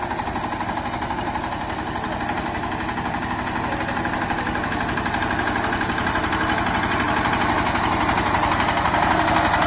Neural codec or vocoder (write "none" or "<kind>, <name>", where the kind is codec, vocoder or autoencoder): none